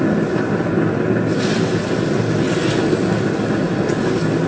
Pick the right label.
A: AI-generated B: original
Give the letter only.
B